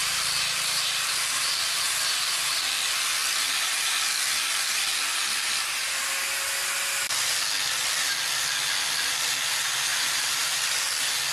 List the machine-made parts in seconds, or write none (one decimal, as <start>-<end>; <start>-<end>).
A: 0.0-2.6; 9.9-10.6